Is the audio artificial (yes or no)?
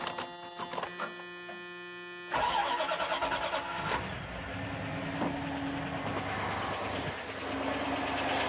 no